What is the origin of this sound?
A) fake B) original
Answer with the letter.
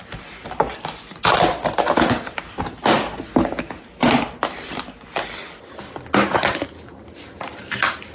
B